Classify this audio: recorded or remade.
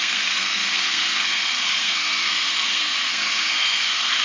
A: remade